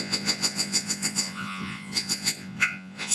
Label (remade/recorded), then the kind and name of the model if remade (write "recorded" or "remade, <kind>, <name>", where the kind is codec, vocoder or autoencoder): remade, vocoder, Vocos